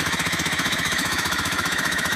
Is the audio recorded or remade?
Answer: remade